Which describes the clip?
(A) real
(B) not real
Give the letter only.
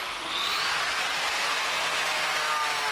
A